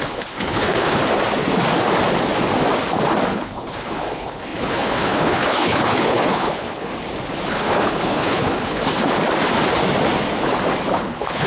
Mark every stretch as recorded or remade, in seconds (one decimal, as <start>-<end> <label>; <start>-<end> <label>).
0.0-1.0 remade; 1.0-3.3 recorded; 3.3-6.9 remade; 6.9-7.5 recorded; 7.5-8.8 remade; 8.8-10.9 recorded; 10.9-11.5 remade